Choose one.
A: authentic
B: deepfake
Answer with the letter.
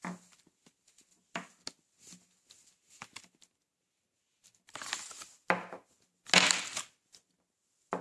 A